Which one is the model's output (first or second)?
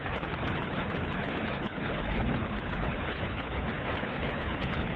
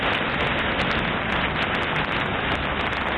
first